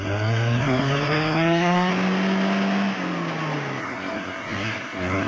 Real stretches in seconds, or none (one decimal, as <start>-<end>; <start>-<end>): 1.9-3.8